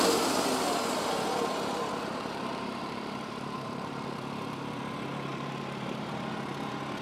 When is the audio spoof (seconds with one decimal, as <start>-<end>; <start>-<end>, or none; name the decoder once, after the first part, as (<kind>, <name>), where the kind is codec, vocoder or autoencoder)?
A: 2.1-3.9 (vocoder, BigVGAN v2); 5.3-6.1